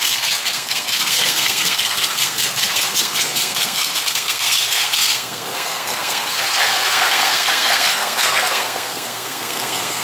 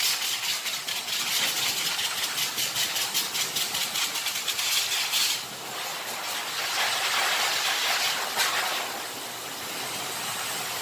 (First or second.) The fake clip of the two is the first